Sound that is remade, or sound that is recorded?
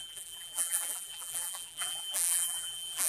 remade